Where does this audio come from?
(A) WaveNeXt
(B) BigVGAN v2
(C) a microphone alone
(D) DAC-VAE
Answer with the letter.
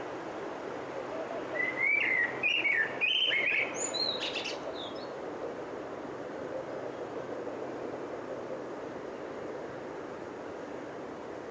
B